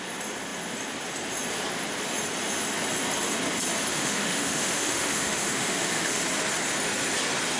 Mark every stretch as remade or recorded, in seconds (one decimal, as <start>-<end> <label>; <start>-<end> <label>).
0.0-3.9 recorded; 3.9-6.2 remade; 6.2-7.6 recorded

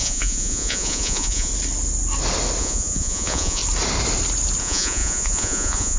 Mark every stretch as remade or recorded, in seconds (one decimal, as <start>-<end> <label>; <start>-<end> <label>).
0.0-1.5 remade; 1.5-2.6 recorded; 2.6-3.6 remade; 3.6-4.6 recorded; 4.6-6.0 remade

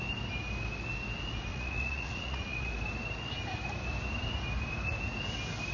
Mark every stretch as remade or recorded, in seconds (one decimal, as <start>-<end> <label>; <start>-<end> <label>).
0.0-1.5 recorded; 1.5-2.7 remade; 2.7-5.7 recorded

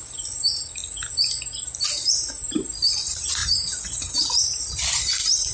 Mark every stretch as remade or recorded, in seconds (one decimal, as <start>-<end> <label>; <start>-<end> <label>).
0.0-3.4 recorded; 3.4-4.9 remade; 4.9-5.5 recorded

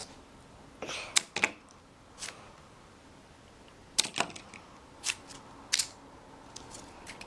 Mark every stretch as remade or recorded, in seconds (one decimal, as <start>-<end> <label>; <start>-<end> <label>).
0.0-7.3 recorded

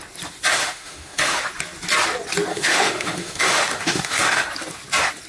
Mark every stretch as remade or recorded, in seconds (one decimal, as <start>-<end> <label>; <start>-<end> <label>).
0.0-0.5 recorded; 0.5-1.4 remade; 1.4-2.5 recorded; 2.5-4.5 remade; 4.5-5.3 recorded

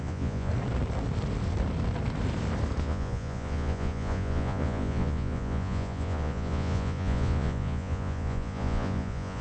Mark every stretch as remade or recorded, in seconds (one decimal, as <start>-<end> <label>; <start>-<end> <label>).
0.0-0.5 remade; 0.5-2.8 recorded; 2.8-9.4 remade